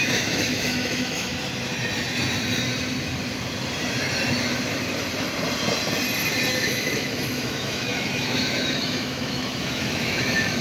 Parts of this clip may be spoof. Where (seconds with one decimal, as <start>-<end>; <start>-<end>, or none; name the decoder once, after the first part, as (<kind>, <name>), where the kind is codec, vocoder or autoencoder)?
0.0-1.3 (autoencoder, DAC-VAE); 6.5-10.6